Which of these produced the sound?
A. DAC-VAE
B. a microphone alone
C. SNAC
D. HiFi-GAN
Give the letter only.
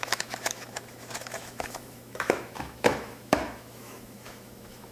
A